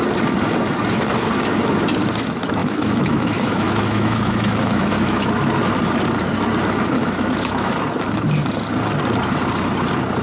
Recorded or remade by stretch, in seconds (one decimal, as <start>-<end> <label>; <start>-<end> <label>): 0.0-2.6 recorded; 2.6-5.3 remade; 5.3-7.0 recorded; 7.0-7.7 remade; 7.7-10.2 recorded